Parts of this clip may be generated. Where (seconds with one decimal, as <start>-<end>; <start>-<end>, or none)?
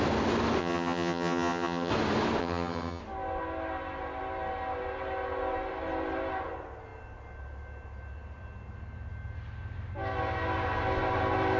0.6-1.9; 2.4-3.0